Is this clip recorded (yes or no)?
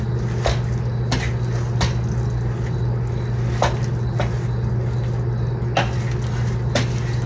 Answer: yes